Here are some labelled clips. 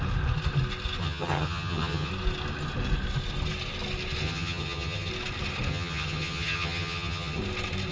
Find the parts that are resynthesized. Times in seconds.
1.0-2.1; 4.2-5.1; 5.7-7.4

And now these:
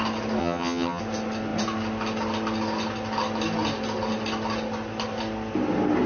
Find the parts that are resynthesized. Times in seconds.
0.4-1.0

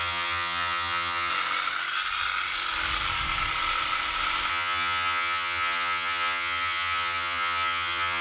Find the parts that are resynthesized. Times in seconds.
0.0-1.3; 4.5-8.2

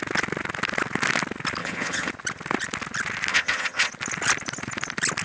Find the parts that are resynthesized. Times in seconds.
1.6-2.1; 3.3-3.9

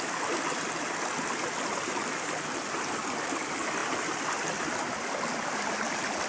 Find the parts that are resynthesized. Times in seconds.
none

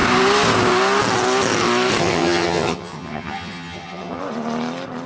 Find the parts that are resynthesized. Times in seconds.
2.0-4.2